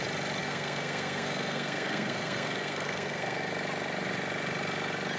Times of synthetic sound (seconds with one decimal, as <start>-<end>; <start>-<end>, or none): 0.4-3.5